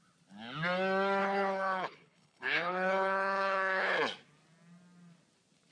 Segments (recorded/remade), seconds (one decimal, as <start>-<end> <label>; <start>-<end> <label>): 0.0-1.2 recorded; 1.2-3.9 remade; 3.9-5.7 recorded